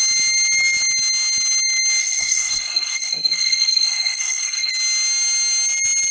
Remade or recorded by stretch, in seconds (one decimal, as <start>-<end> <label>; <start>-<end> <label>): 0.0-2.0 recorded; 2.0-4.7 remade; 4.7-6.1 recorded